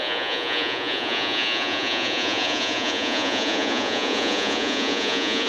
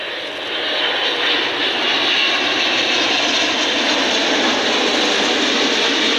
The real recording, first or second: second